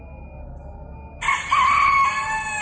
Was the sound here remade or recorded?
recorded